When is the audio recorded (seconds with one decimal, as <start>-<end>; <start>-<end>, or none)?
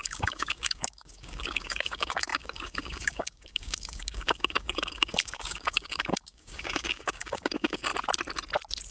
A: 7.9-8.9